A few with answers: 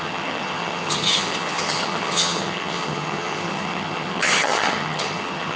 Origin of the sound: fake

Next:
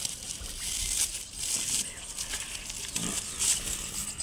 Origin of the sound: real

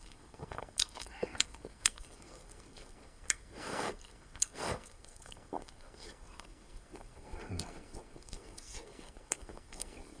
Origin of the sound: fake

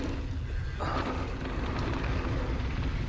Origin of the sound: real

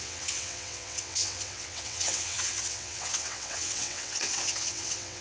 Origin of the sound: fake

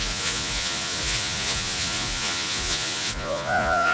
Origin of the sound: fake